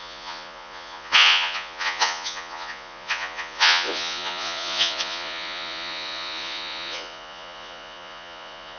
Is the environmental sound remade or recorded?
remade